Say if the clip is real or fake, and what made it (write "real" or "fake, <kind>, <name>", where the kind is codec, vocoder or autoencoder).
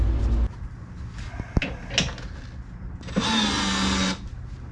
real